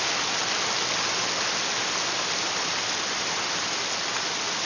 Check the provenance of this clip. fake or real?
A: real